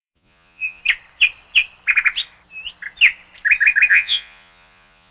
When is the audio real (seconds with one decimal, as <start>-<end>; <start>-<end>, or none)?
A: 0.8-3.9

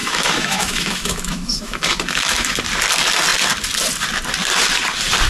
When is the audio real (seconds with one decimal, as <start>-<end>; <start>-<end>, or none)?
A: 2.6-5.3

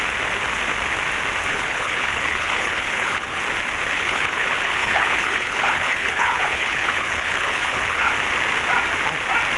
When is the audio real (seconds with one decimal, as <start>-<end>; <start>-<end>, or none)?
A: 0.0-1.5; 3.4-3.9; 8.1-9.6

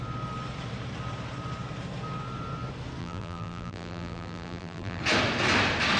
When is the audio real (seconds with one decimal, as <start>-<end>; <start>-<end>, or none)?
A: 0.0-3.0; 5.0-6.0